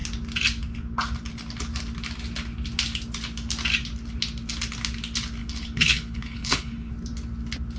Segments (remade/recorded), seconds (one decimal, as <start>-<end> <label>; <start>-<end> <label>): 0.0-5.4 recorded; 5.4-6.9 remade; 6.9-7.8 recorded